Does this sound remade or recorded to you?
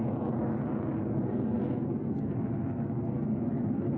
recorded